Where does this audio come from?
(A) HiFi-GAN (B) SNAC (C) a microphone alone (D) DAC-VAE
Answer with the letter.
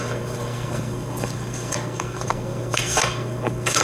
B